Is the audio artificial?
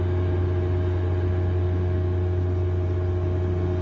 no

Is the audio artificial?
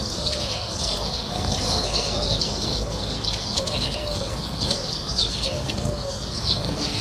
yes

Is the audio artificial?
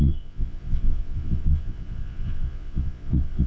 yes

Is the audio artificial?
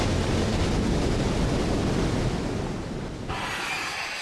no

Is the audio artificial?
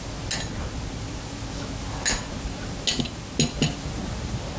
no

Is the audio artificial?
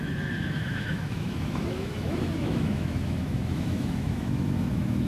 yes